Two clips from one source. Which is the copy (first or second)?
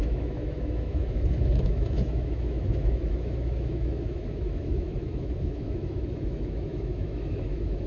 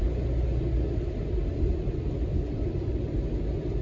first